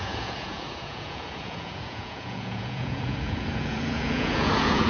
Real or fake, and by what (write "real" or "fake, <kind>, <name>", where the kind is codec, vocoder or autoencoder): fake, vocoder, Vocos